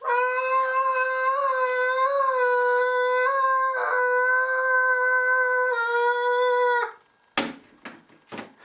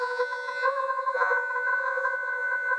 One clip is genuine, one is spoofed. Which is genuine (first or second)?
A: first